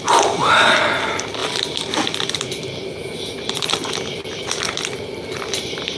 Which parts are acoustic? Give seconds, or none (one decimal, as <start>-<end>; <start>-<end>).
0.0-6.0